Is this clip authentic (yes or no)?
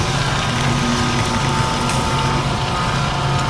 yes